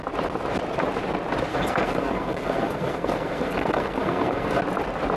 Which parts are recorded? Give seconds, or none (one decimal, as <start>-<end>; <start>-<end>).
0.0-1.5; 4.6-5.2